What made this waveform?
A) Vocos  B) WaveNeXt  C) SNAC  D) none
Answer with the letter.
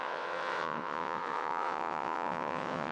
B